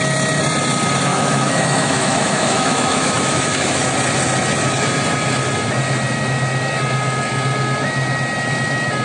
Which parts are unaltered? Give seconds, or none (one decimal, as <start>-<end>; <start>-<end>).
0.0-1.1; 3.8-9.0

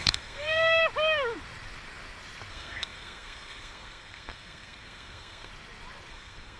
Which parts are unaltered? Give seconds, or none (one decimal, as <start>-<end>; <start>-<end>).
0.8-2.5; 5.5-6.1

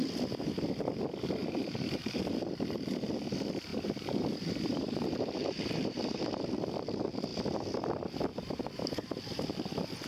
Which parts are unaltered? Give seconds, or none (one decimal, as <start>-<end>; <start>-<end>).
0.0-1.4; 2.2-3.7; 6.3-8.3; 9.4-10.1

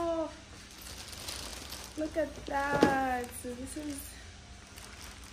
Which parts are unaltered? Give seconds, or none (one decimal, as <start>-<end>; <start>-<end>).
0.0-5.3

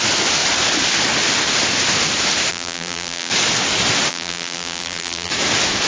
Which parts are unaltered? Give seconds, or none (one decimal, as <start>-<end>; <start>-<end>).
0.0-2.5; 3.3-4.1; 5.3-5.9